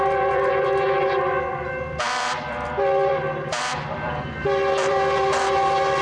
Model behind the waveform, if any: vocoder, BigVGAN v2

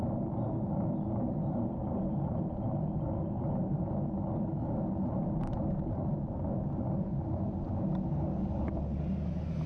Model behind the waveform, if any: none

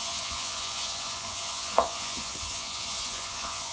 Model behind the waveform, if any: vocoder, Vocos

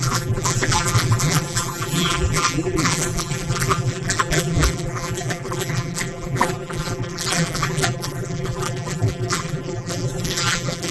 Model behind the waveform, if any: vocoder, BigVGAN v2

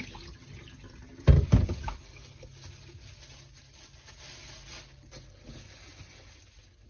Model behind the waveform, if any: none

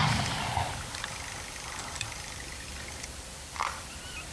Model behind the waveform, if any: vocoder, BigVGAN v2